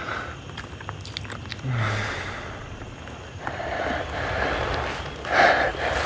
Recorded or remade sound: recorded